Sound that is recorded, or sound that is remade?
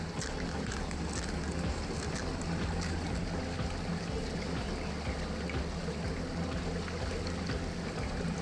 recorded